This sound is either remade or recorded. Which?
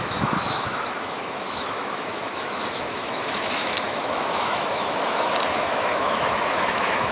remade